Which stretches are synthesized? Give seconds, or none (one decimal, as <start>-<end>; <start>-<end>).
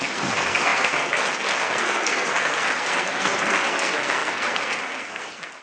0.0-5.6